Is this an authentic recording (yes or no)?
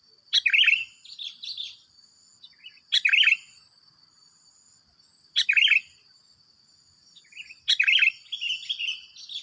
yes